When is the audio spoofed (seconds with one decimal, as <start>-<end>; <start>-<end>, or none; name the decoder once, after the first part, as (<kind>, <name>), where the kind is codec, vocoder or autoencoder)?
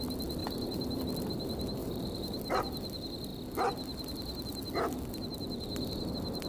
0.4-1.0 (vocoder, BigVGAN v2); 1.8-2.4